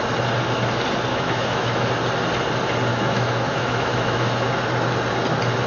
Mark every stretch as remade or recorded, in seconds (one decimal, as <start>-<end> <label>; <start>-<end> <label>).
0.0-1.1 recorded; 1.1-1.9 remade; 1.9-2.9 recorded; 2.9-4.5 remade; 4.5-5.7 recorded

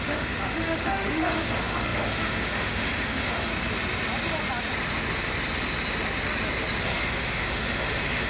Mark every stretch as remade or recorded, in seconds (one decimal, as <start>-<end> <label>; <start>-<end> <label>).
0.0-3.5 remade; 3.5-6.8 recorded; 6.8-8.3 remade

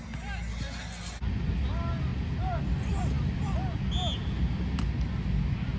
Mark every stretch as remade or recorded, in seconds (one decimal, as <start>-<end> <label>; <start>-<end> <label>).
0.0-5.8 recorded

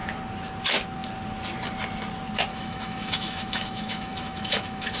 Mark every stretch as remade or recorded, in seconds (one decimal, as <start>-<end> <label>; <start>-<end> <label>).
0.0-2.5 recorded; 2.5-5.0 remade

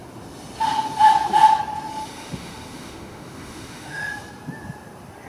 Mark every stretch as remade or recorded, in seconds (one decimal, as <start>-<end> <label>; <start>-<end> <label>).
0.0-1.9 recorded; 1.9-4.1 remade; 4.1-5.3 recorded

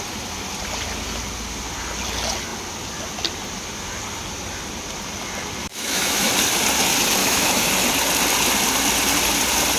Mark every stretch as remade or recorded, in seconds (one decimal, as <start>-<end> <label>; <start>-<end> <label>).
0.0-5.6 recorded; 5.6-6.3 remade; 6.3-7.2 recorded; 7.2-7.7 remade; 7.7-9.8 recorded